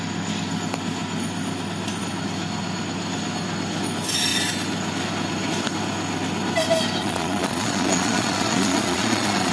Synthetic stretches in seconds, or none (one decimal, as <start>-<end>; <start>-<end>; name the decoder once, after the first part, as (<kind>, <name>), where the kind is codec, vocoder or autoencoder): 7.0-9.5 (vocoder, Vocos)